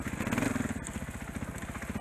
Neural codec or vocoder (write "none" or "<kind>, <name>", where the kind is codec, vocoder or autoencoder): none